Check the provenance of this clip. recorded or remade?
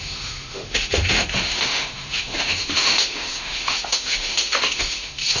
remade